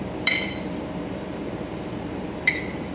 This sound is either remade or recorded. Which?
remade